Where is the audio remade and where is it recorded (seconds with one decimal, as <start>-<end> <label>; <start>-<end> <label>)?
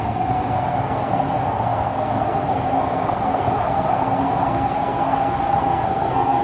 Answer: 0.0-6.4 remade